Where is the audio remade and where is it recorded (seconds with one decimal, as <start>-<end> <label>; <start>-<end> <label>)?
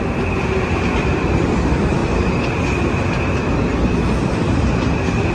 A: 0.0-5.3 recorded